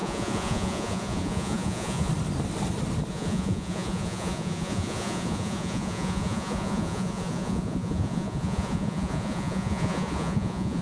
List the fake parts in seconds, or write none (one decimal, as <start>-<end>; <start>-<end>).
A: 0.0-2.1; 3.1-10.8